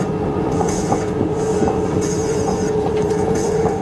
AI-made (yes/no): yes